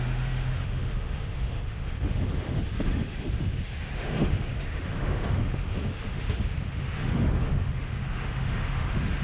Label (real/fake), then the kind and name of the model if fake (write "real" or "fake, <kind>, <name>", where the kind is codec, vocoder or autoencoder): fake, autoencoder, DAC-VAE